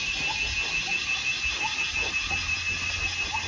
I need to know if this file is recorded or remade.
recorded